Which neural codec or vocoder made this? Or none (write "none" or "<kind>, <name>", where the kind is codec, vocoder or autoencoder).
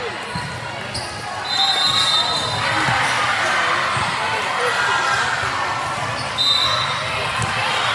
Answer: none